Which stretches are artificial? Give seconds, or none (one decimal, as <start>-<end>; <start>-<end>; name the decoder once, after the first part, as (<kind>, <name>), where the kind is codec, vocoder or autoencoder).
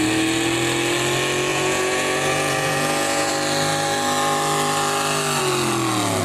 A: 1.5-3.3 (vocoder, Vocos)